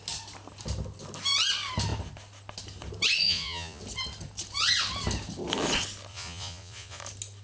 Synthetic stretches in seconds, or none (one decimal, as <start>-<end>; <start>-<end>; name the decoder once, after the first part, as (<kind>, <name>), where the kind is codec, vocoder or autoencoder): 3.2-3.8 (vocoder, Vocos); 6.1-7.0